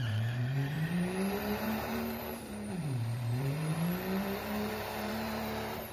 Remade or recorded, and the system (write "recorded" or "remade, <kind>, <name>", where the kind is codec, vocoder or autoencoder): remade, vocoder, BigVGAN v2